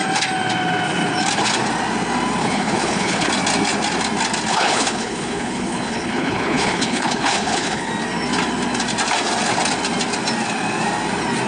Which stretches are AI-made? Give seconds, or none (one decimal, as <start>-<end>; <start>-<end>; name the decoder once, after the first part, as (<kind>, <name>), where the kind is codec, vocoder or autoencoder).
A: 2.4-3.3 (codec, HILCodec); 4.5-7.9